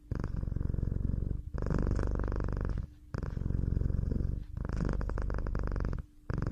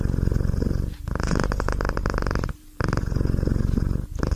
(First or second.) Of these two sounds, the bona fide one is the first